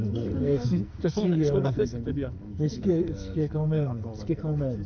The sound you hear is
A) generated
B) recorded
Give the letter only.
A